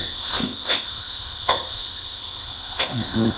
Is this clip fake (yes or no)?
yes